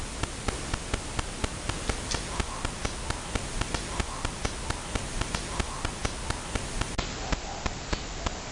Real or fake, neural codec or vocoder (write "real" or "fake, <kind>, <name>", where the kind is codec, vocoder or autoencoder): real